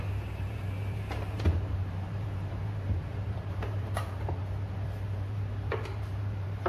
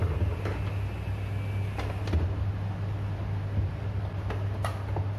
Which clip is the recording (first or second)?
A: second